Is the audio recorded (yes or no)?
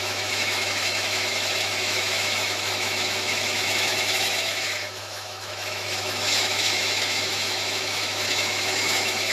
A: no